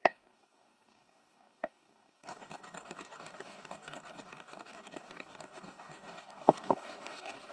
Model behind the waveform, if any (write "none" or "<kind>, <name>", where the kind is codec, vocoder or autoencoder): codec, DAC